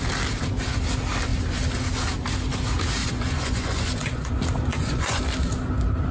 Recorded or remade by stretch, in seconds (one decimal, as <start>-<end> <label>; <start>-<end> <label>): 0.0-3.0 recorded; 3.0-4.3 remade; 4.3-4.7 recorded; 4.7-5.2 remade; 5.2-6.1 recorded

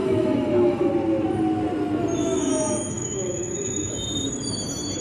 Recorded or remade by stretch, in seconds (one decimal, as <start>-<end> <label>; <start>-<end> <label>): 0.0-0.9 remade; 0.9-2.2 recorded; 2.2-3.9 remade; 3.9-5.0 recorded

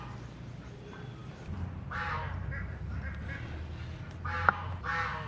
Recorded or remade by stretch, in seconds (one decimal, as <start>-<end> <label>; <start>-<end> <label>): 0.0-5.3 recorded

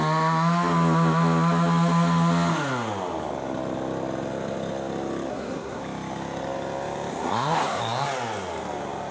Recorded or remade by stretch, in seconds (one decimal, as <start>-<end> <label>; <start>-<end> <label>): 0.0-5.3 recorded; 5.3-5.8 remade; 5.8-7.1 recorded; 7.1-7.8 remade; 7.8-9.1 recorded

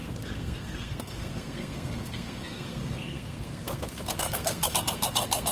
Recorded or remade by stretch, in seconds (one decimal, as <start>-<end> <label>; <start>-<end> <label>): 0.0-5.5 remade

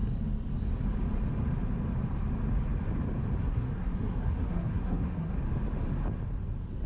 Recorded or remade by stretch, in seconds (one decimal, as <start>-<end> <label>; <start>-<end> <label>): 0.0-3.4 recorded; 3.4-5.4 remade; 5.4-6.9 recorded

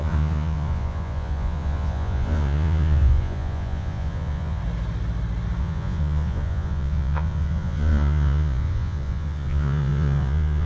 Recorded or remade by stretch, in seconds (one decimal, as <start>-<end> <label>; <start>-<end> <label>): 0.0-4.6 remade; 4.6-5.6 recorded; 5.6-10.7 remade

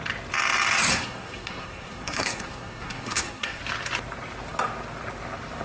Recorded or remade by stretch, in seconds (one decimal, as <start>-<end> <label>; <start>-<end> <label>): 0.0-0.9 recorded; 0.9-3.6 remade; 3.6-5.6 recorded